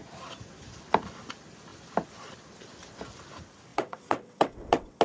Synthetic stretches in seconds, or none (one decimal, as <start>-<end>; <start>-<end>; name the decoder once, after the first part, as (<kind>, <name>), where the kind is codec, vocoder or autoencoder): 3.7-5.0 (vocoder, WaveNeXt)